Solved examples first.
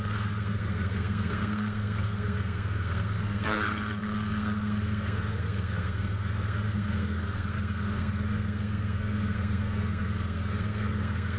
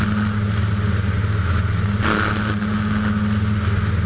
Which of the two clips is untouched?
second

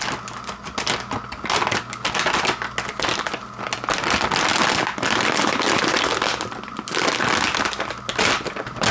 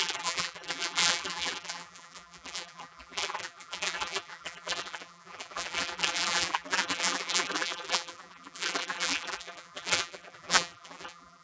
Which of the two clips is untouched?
first